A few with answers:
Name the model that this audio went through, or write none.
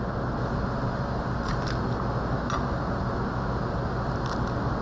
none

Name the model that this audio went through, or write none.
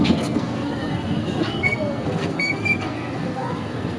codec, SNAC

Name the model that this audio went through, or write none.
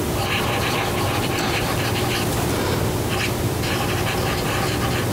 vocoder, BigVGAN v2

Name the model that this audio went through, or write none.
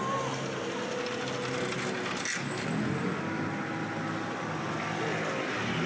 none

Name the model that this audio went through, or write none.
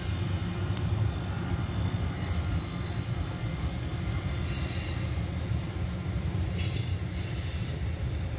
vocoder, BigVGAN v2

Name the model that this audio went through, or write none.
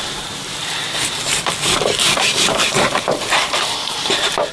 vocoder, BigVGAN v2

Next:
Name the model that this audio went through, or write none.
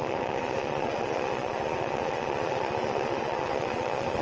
vocoder, Vocos